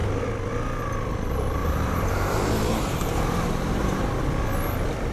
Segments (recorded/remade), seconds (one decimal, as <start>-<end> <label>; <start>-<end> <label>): 0.0-1.6 recorded; 1.6-4.0 remade; 4.0-5.1 recorded